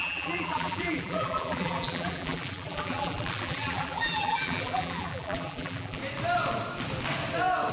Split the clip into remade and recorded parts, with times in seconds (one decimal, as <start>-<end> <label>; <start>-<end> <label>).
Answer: 0.0-6.0 remade; 6.0-7.7 recorded